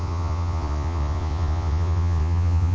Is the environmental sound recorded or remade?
remade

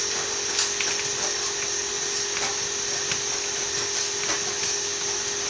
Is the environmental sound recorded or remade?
recorded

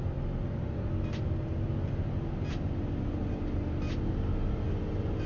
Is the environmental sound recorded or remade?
recorded